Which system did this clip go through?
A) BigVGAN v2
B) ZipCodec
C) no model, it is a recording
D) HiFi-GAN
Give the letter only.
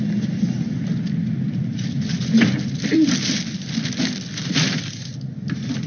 C